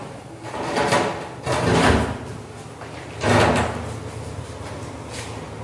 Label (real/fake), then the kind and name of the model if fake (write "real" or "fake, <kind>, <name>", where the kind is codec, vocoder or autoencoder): real